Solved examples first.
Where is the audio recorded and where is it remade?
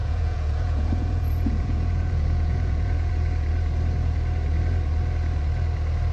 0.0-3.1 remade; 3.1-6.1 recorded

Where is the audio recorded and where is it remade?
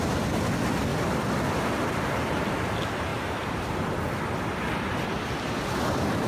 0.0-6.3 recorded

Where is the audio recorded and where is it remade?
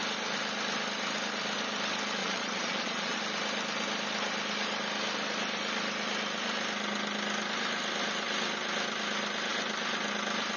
0.0-2.2 recorded; 2.2-3.2 remade; 3.2-10.6 recorded